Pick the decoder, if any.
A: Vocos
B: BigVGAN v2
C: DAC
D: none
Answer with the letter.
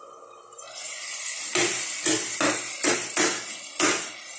D